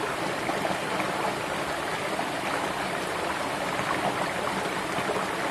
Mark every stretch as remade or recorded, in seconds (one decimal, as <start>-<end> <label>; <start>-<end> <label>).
0.0-5.5 recorded